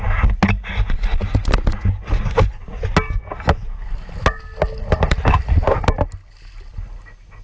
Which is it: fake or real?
real